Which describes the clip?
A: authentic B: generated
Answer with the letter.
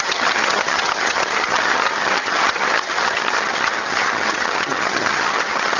B